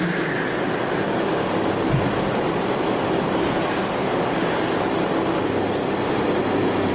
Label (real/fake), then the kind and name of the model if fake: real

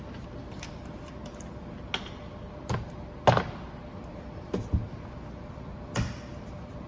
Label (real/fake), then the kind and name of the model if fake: real